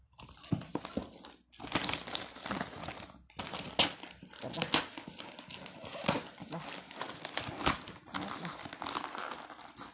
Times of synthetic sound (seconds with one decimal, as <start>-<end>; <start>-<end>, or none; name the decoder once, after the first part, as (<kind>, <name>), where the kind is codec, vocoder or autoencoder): none